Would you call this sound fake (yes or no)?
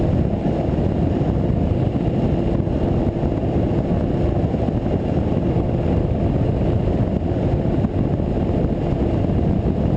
no